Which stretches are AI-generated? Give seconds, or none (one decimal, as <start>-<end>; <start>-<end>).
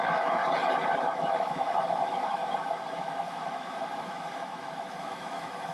0.0-0.4; 1.0-2.4; 3.0-5.7